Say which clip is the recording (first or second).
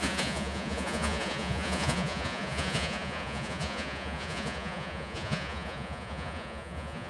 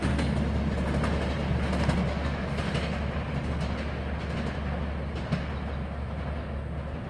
second